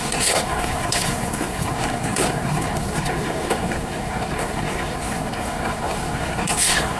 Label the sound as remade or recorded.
remade